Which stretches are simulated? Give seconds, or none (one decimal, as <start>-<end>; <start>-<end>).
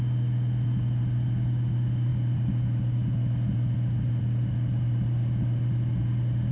none